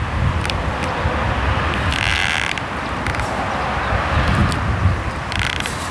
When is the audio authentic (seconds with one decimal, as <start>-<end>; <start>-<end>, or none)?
0.0-5.9